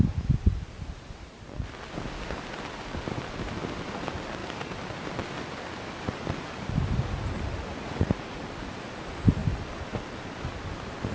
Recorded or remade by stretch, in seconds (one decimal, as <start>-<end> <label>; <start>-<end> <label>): 0.0-7.7 recorded; 7.7-8.4 remade; 8.4-11.1 recorded